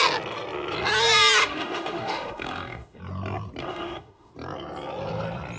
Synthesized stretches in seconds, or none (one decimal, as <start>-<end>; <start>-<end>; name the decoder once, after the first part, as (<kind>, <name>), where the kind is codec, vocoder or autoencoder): 1.4-3.0 (autoencoder, DAC-VAE); 3.6-4.3